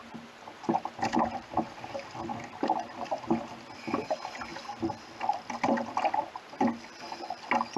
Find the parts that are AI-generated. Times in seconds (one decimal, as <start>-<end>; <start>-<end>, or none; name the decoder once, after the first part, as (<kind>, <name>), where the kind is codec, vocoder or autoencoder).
2.3-3.1 (vocoder, BigVGAN v2); 4.5-6.2